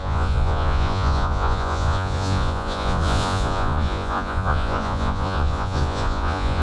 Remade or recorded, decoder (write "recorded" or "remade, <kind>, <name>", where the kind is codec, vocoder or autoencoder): remade, vocoder, Vocos